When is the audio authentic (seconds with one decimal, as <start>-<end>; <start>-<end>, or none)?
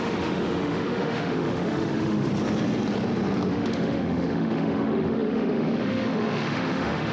2.3-3.5